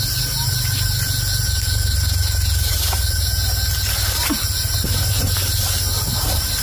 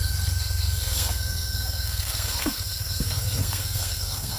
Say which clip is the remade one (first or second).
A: second